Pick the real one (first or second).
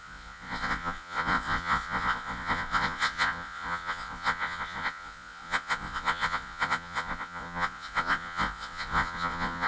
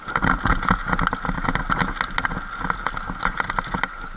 second